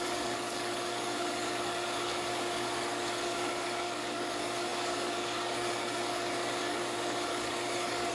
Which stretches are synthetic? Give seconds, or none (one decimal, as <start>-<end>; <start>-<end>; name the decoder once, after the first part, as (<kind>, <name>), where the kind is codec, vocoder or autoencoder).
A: 0.0-8.1 (codec, DAC)